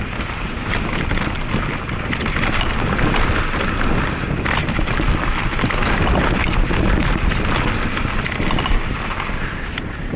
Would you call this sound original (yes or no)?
yes